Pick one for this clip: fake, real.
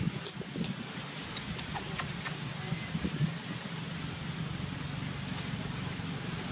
real